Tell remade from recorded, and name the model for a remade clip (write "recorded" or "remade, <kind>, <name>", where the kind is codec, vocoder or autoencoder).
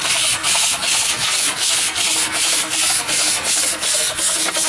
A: remade, codec, SNAC